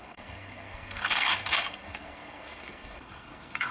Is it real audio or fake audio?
fake